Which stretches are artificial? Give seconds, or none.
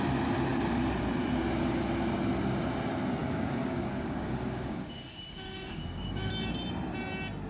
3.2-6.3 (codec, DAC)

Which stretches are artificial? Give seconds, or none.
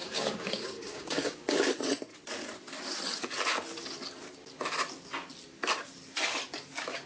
0.0-1.7 (codec, DAC)